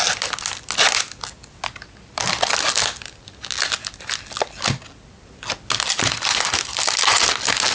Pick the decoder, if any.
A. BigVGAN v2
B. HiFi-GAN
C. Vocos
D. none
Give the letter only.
D